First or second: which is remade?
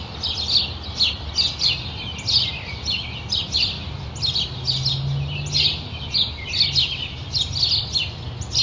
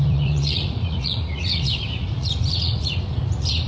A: second